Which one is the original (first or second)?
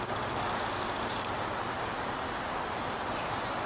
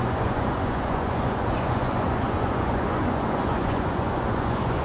first